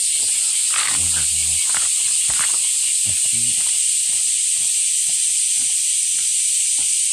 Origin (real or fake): real